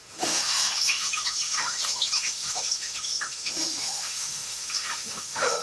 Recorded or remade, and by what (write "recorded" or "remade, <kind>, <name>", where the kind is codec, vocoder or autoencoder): remade, autoencoder, DAC-VAE